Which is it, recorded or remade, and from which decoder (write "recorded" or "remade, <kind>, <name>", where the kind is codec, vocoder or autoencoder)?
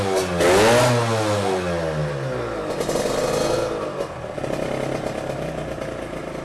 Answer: recorded